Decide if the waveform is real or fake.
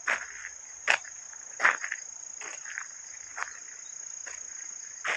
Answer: real